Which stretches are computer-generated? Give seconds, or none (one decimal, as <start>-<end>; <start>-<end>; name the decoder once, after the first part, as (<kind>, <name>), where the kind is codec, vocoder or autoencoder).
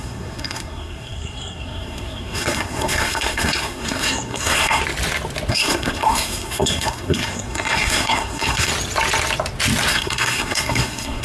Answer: 0.0-4.8 (codec, SNAC); 5.5-8.7; 9.9-11.2